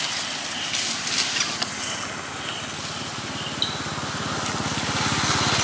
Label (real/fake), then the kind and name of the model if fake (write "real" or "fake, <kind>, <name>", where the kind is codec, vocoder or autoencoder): real